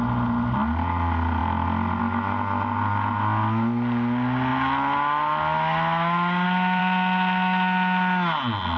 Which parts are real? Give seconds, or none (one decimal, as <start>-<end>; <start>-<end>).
0.0-8.8